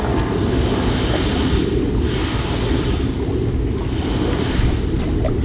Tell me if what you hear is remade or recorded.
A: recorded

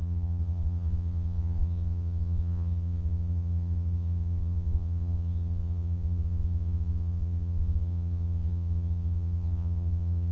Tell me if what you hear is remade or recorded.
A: remade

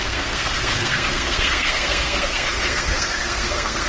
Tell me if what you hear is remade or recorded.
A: remade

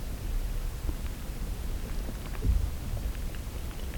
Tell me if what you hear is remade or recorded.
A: recorded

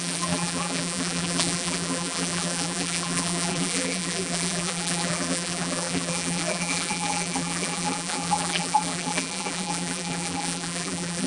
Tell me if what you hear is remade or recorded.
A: remade